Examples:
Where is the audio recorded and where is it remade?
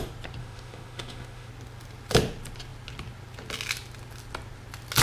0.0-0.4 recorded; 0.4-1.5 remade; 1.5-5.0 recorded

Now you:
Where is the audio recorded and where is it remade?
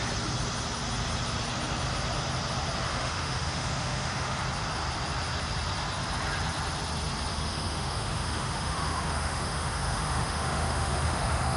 0.0-2.9 recorded; 2.9-4.4 remade; 4.4-7.3 recorded; 7.3-11.6 remade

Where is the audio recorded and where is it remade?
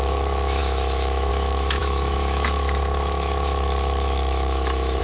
0.0-5.0 remade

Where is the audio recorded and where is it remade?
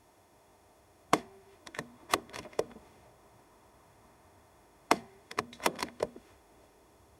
0.0-7.2 remade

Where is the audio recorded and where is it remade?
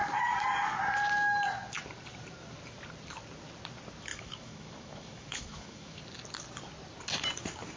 0.0-4.1 recorded; 4.1-6.0 remade; 6.0-7.8 recorded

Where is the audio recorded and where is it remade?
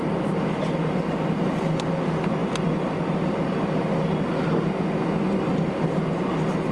0.0-6.7 recorded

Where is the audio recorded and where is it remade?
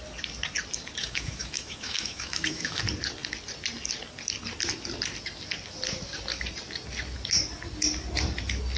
0.0-1.0 recorded; 1.0-2.8 remade; 2.8-8.8 recorded